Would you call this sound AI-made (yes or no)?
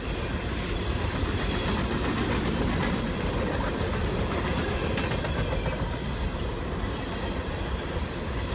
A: no